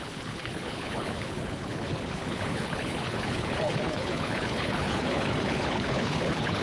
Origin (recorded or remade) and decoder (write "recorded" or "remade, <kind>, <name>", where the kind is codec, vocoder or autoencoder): remade, codec, HILCodec